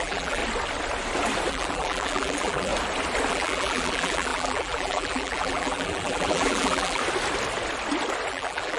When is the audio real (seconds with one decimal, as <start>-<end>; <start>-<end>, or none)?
0.4-1.5; 2.7-3.3; 7.0-8.3